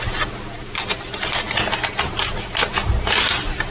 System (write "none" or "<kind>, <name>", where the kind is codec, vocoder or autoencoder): none